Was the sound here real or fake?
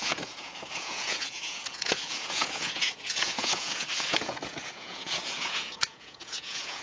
fake